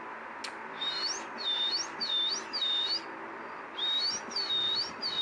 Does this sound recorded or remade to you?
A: recorded